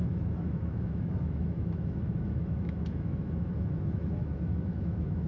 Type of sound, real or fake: fake